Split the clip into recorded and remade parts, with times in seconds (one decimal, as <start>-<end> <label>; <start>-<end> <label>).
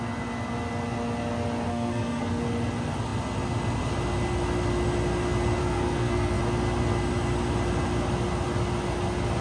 0.0-1.7 recorded; 1.7-2.4 remade; 2.4-5.6 recorded; 5.6-6.4 remade; 6.4-9.4 recorded